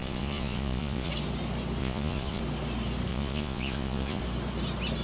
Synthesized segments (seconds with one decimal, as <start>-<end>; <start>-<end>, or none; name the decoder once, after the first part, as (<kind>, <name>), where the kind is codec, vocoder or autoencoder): 0.0-1.1 (vocoder, Vocos); 1.8-2.4; 3.1-4.2